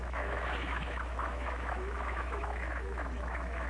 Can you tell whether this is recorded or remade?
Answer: remade